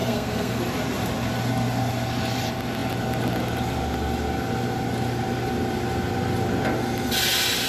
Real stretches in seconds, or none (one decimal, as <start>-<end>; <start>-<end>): 0.6-7.7